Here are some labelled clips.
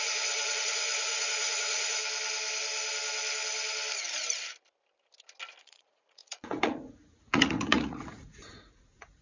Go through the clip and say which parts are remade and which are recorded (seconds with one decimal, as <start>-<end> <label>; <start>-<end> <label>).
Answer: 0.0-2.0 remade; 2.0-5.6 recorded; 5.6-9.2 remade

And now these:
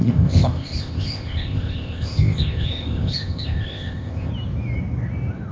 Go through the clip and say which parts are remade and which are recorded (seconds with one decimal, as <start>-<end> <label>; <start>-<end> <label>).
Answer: 0.0-4.3 remade; 4.3-5.5 recorded

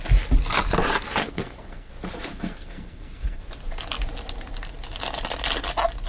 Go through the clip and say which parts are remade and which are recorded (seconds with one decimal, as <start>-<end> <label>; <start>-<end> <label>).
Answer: 0.0-1.2 recorded; 1.2-1.9 remade; 1.9-2.3 recorded; 2.3-3.4 remade; 3.4-6.1 recorded